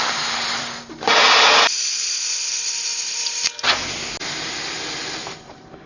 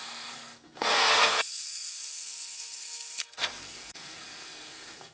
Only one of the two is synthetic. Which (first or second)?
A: second